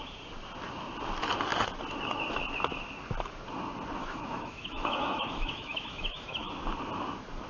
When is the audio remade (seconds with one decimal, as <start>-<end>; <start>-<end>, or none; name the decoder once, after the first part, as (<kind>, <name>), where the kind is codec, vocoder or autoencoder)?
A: 4.0-6.5 (autoencoder, DAC-VAE)